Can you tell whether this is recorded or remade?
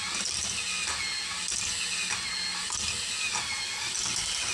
recorded